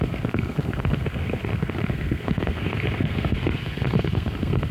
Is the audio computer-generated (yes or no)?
yes